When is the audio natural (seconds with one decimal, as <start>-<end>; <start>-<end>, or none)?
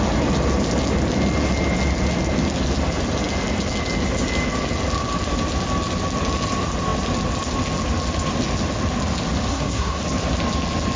0.0-9.5; 10.0-11.0